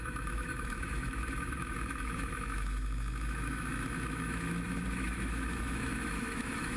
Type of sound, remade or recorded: remade